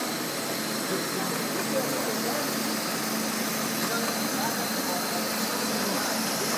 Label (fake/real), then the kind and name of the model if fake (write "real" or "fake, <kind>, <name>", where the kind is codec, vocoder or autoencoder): real